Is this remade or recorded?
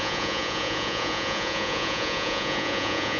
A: remade